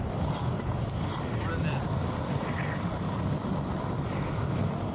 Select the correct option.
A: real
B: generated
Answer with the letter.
A